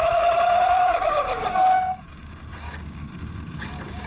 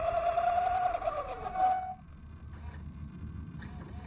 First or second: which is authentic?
second